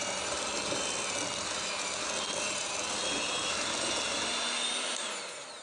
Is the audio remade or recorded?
recorded